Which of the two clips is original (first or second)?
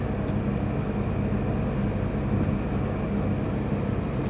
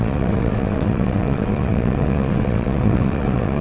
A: first